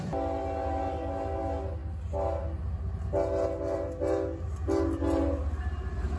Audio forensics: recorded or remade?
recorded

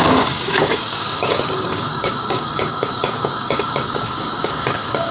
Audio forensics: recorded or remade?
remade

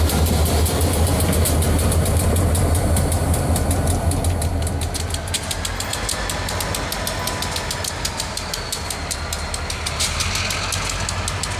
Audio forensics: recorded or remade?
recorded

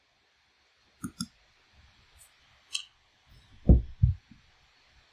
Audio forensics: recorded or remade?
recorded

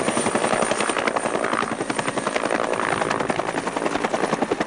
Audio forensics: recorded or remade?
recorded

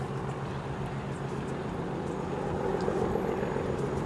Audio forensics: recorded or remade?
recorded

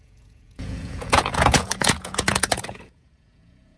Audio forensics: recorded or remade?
remade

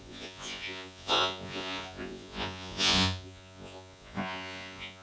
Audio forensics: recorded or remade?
remade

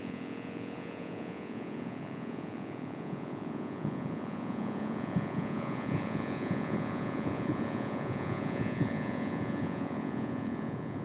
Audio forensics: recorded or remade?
remade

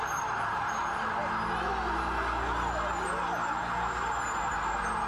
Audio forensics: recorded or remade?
recorded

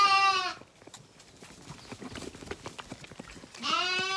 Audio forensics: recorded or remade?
recorded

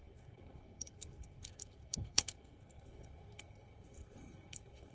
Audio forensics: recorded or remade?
remade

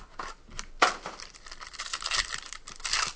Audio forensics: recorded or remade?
recorded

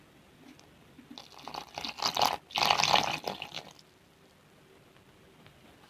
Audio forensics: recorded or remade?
recorded